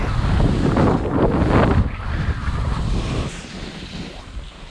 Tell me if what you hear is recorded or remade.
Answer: recorded